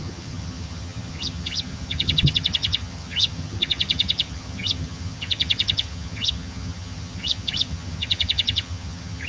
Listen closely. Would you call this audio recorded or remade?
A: remade